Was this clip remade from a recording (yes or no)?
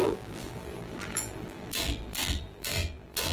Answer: yes